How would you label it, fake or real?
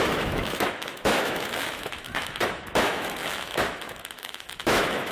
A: fake